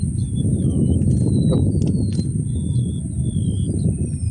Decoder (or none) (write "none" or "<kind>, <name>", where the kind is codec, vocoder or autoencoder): none